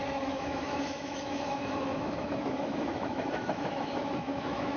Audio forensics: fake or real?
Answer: fake